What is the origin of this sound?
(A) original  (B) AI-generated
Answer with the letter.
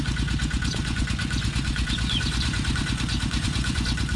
B